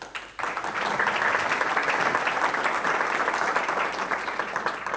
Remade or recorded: recorded